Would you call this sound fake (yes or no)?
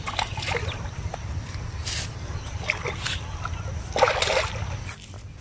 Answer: no